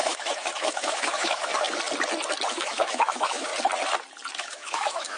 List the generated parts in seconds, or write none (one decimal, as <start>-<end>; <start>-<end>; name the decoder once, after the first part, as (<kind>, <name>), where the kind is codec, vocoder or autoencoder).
0.0-1.5 (autoencoder, DAC-VAE); 2.5-3.5; 4.4-5.2